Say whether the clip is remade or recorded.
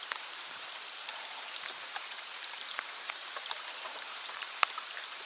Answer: remade